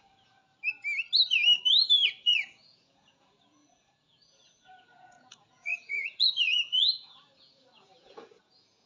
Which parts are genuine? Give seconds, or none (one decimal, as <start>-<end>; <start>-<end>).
0.4-2.2